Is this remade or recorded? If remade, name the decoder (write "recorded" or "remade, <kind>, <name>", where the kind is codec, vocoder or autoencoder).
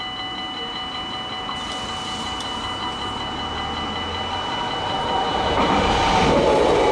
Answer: recorded